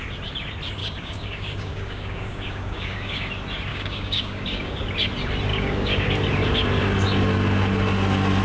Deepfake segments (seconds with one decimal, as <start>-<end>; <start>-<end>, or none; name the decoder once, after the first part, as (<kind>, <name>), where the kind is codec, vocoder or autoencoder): 0.8-3.3 (codec, DAC); 3.7-4.8; 5.5-6.1